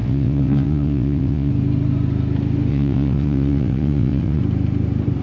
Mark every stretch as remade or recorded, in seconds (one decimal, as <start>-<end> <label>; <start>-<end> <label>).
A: 0.0-1.5 remade; 1.5-2.7 recorded; 2.7-4.4 remade; 4.4-5.2 recorded